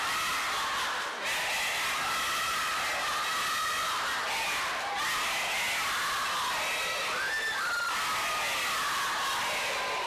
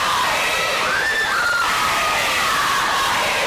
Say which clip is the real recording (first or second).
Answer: first